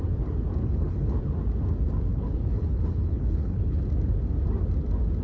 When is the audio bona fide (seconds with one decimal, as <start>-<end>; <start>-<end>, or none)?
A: 0.0-0.6; 1.2-2.1; 3.8-5.2